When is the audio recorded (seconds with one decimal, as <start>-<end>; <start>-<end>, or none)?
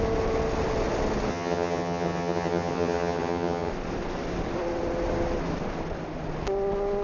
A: 0.0-1.3; 3.7-7.0